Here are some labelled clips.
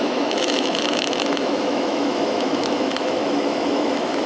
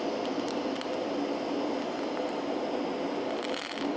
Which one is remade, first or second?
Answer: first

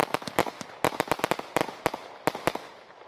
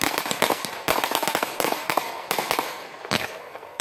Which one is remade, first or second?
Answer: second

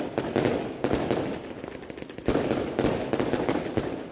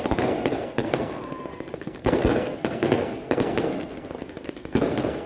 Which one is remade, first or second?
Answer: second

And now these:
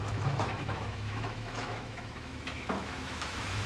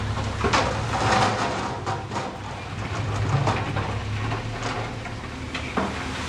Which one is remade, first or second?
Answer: first